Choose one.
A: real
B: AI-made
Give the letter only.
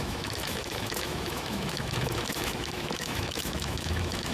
B